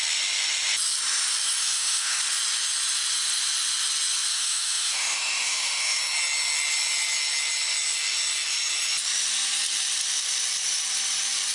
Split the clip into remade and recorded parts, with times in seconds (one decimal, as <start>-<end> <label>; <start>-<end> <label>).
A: 0.0-1.6 recorded; 1.6-2.2 remade; 2.2-4.3 recorded; 4.3-6.0 remade; 6.0-11.5 recorded